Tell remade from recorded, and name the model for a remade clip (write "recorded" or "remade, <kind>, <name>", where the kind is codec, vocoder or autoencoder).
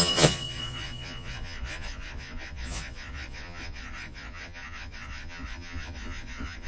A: remade, vocoder, Vocos